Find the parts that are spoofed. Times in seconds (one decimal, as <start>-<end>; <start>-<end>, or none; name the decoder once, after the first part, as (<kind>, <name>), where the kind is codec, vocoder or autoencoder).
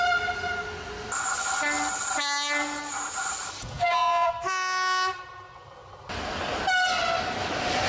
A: 3.6-4.3 (vocoder, Vocos)